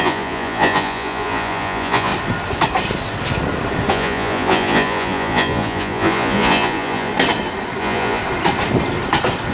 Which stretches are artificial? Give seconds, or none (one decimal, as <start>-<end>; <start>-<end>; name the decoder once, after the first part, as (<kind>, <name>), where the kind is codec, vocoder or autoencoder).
0.0-2.1 (vocoder, Vocos); 3.9-7.1; 7.8-8.2